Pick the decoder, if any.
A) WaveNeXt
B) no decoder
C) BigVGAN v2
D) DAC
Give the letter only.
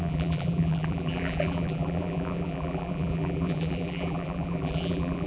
C